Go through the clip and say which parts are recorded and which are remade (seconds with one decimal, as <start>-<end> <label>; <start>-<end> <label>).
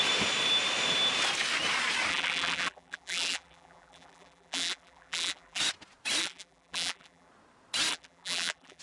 0.0-2.1 recorded; 2.1-5.6 remade; 5.6-6.2 recorded; 6.2-7.3 remade; 7.3-7.9 recorded; 7.9-8.8 remade